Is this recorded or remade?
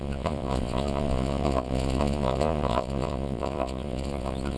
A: remade